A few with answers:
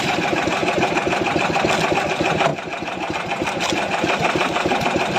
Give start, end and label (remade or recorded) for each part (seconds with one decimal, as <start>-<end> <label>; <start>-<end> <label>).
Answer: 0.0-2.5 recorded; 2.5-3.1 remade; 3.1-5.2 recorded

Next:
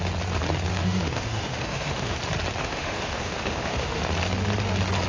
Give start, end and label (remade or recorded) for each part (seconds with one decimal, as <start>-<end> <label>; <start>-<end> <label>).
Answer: 0.0-0.7 recorded; 0.7-2.2 remade; 2.2-2.6 recorded; 2.6-4.0 remade; 4.0-5.1 recorded

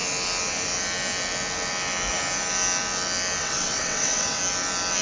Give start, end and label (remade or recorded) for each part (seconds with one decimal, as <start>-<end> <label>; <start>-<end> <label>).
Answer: 0.0-3.4 recorded; 3.4-4.4 remade; 4.4-5.0 recorded